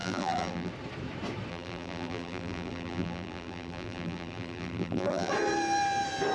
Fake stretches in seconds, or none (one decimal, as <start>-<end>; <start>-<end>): 0.0-0.7; 1.5-5.3